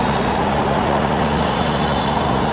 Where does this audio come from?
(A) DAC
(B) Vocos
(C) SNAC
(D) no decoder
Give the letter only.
B